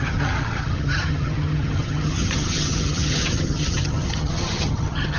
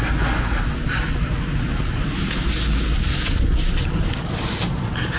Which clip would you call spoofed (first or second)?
first